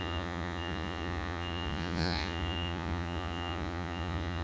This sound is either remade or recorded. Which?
remade